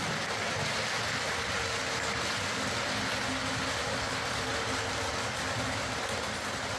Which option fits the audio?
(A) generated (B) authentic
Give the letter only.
B